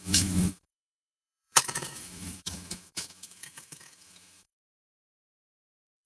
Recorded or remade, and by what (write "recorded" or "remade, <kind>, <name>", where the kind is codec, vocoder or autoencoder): remade, autoencoder, DAC-VAE